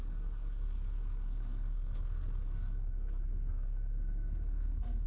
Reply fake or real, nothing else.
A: fake